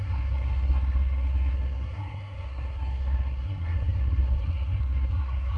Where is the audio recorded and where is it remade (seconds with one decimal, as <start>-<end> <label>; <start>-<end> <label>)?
0.0-5.6 remade